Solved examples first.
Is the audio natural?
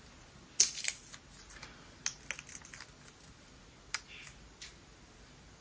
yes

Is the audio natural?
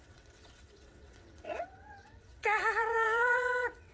no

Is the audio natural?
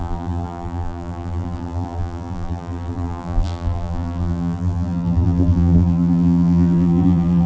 no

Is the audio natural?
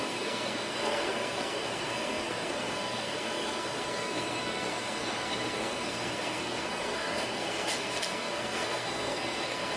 no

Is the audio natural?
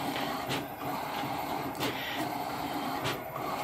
no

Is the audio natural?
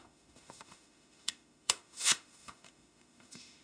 no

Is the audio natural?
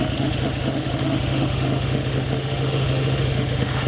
no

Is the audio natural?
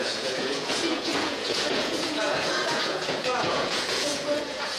no